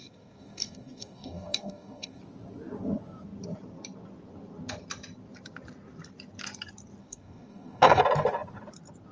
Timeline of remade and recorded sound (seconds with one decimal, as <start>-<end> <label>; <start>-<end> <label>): 0.0-2.2 remade; 2.2-7.0 recorded; 7.0-8.0 remade; 8.0-9.1 recorded